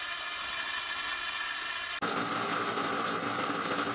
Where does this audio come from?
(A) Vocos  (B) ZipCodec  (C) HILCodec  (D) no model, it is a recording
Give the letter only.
D